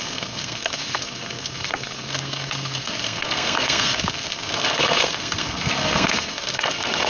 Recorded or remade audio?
remade